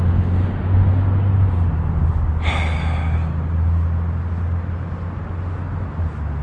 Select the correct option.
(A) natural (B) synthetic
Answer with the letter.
A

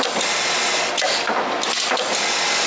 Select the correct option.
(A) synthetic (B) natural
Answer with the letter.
B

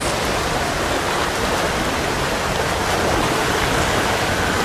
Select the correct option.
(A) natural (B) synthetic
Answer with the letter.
A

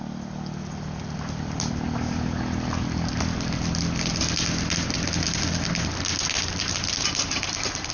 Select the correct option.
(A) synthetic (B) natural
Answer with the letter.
B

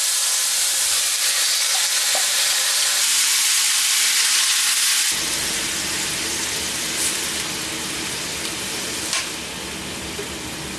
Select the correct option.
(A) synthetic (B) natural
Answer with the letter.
B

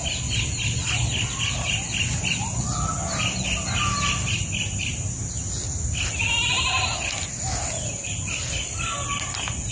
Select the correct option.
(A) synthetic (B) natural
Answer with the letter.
B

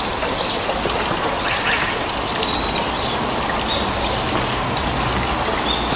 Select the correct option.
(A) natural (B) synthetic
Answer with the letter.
A